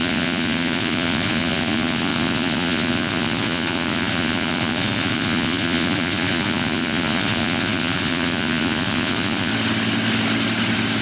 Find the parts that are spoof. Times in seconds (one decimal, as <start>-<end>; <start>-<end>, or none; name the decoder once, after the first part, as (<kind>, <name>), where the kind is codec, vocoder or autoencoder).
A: 0.0-9.5 (vocoder, Vocos)